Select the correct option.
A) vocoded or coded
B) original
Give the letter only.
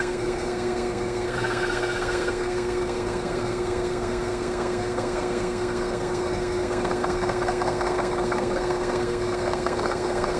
A